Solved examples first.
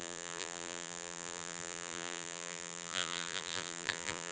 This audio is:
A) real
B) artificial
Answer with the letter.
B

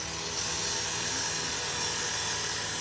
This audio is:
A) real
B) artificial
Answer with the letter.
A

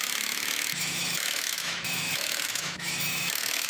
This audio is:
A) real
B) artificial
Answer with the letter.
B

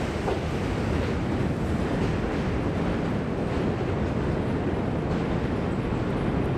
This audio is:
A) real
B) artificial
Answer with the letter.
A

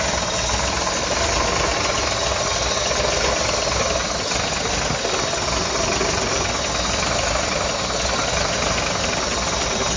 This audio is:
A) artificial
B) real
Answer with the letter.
B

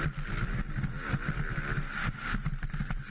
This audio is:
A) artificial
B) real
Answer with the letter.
B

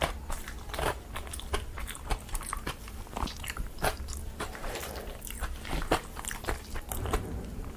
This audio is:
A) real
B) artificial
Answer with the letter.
B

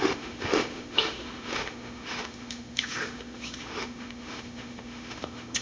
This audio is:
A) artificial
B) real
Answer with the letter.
A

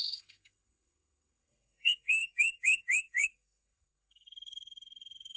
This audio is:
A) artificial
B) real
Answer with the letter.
A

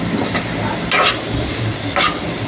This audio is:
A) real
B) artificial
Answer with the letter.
A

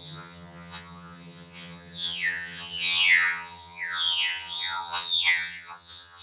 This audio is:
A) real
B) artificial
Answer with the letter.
B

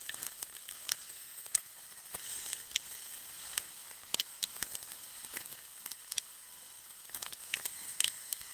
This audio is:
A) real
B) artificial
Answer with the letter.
B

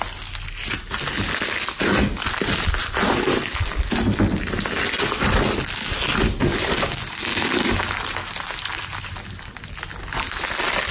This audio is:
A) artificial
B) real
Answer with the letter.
B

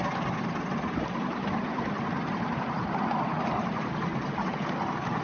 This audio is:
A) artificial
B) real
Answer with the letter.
B